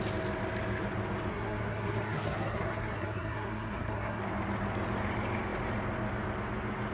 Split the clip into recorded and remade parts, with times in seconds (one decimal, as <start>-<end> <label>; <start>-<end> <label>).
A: 0.0-1.3 recorded; 1.3-4.2 remade; 4.2-6.9 recorded